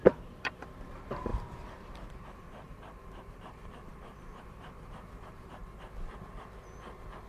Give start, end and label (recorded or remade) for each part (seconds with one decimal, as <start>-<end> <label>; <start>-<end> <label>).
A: 0.0-5.6 remade; 5.6-7.3 recorded